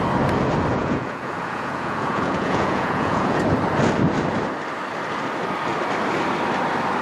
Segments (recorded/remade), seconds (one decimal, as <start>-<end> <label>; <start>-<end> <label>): 0.0-0.7 recorded; 0.7-3.4 remade; 3.4-7.0 recorded